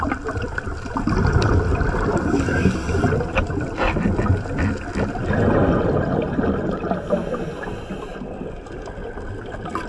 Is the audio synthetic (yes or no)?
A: no